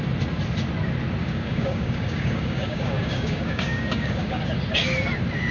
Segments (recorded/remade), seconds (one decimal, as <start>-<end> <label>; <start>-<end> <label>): 0.0-1.2 recorded; 1.2-4.4 remade; 4.4-5.5 recorded